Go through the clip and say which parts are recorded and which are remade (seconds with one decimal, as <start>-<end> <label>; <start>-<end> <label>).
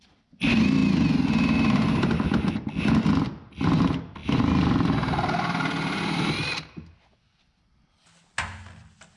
0.0-9.2 recorded